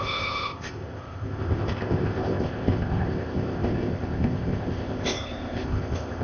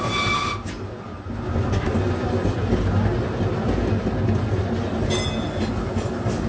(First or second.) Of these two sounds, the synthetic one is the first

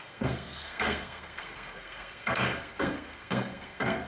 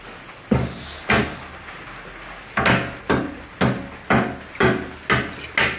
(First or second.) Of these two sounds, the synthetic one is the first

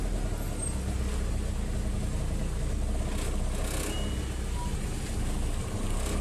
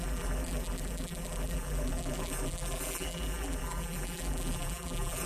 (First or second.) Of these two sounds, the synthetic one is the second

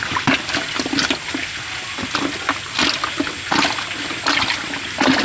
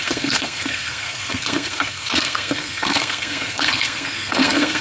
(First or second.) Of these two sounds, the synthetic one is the second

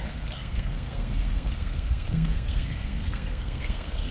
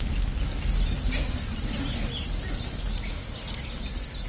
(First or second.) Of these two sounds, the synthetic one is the first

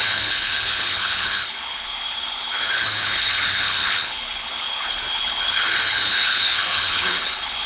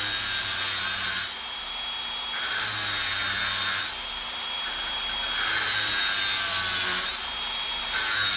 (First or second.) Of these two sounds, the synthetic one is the first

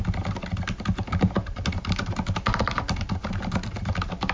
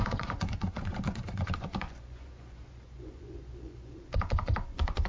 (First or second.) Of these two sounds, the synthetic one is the second